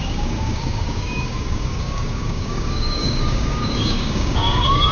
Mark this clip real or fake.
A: fake